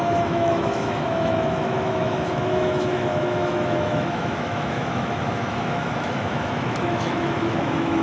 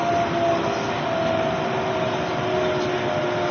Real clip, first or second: second